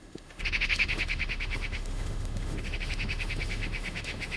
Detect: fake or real fake